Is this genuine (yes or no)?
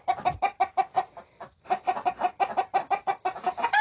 yes